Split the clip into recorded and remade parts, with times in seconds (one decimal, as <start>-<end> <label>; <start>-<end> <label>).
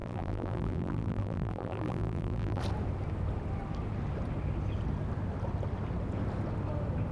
0.0-2.6 remade; 2.6-7.1 recorded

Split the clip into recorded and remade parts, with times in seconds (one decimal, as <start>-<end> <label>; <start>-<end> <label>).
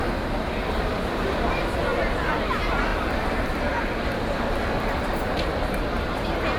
0.0-2.9 recorded; 2.9-3.8 remade; 3.8-6.6 recorded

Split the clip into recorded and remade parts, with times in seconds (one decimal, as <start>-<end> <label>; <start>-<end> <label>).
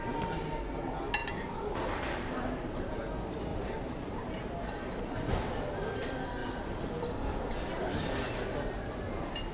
0.0-1.2 recorded; 1.2-3.0 remade; 3.0-3.5 recorded; 3.5-4.3 remade; 4.3-6.4 recorded; 6.4-7.9 remade; 7.9-9.5 recorded